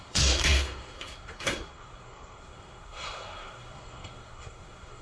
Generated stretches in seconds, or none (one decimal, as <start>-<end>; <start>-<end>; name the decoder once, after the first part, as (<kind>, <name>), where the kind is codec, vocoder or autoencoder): 0.0-5.0 (codec, SNAC)